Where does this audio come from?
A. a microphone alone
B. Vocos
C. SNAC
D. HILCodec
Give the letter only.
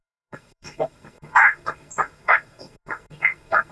C